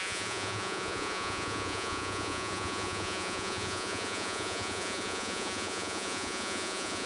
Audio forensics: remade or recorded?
remade